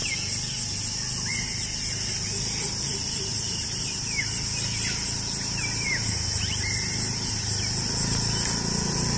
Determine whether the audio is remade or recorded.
recorded